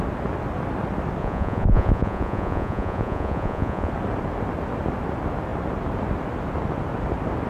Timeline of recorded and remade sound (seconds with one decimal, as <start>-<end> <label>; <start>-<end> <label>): 0.0-1.2 recorded; 1.2-3.9 remade; 3.9-7.5 recorded

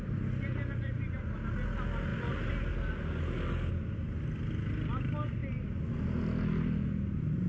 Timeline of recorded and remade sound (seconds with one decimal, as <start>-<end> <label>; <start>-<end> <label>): 0.0-7.5 recorded

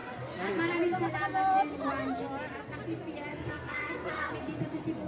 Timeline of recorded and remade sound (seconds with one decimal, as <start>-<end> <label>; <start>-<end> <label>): 0.0-3.3 recorded; 3.3-4.3 remade; 4.3-5.1 recorded

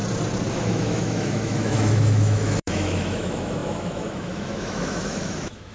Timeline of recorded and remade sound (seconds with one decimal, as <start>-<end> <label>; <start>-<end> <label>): 0.0-0.5 recorded; 0.5-5.7 remade

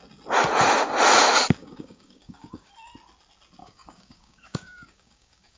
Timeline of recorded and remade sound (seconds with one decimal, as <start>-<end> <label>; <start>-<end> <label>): 0.0-1.6 recorded; 1.6-2.7 remade; 2.7-3.6 recorded; 3.6-5.6 remade

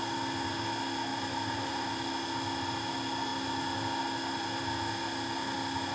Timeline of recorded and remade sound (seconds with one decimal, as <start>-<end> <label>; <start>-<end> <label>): 0.0-1.1 recorded; 1.1-1.9 remade; 1.9-5.9 recorded